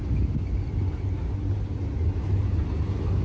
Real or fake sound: real